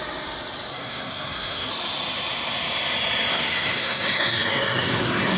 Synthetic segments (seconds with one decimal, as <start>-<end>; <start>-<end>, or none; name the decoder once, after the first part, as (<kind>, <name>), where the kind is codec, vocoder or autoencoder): 0.7-1.7 (codec, SNAC); 3.3-5.4